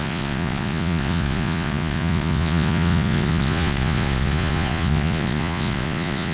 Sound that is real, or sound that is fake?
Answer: fake